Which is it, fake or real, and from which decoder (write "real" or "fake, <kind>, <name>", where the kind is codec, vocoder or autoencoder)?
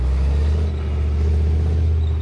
real